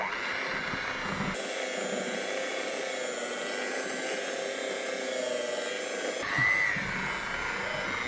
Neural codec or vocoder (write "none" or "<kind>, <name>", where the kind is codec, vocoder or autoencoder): none